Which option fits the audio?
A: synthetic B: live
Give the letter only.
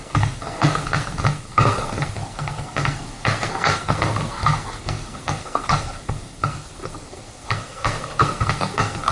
A